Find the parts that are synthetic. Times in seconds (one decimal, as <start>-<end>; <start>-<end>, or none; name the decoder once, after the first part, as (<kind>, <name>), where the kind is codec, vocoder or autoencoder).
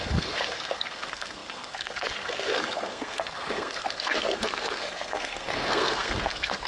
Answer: 0.0-6.7 (codec, SNAC)